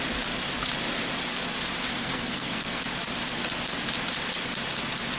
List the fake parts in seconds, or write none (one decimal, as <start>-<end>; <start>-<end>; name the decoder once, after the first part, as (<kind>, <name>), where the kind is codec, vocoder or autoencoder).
2.0-2.8 (codec, SNAC)